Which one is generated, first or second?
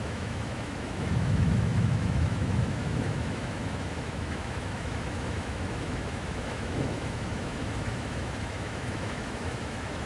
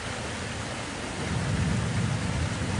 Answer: first